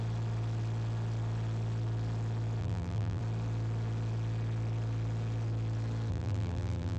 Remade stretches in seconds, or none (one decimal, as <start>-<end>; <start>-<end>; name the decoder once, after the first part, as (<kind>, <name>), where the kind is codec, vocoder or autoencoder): 2.6-3.2 (vocoder, BigVGAN v2); 6.1-7.0